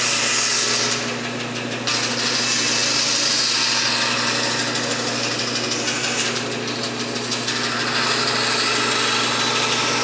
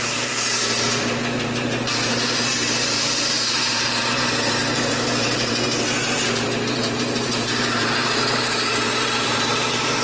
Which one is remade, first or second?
second